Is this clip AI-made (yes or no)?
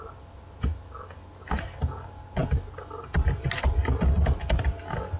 no